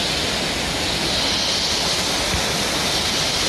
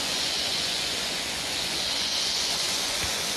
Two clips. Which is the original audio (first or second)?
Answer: first